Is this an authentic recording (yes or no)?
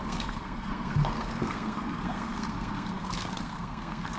no